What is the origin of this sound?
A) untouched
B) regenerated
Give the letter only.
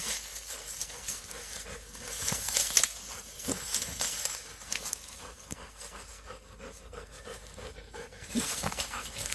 B